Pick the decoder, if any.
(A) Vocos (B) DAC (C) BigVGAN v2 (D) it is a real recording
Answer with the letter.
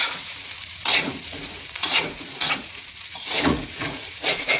A